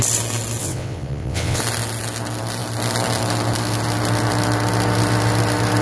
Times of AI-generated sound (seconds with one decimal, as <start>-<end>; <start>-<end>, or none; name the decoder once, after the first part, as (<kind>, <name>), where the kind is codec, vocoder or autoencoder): 0.6-1.6 (vocoder, WaveNeXt)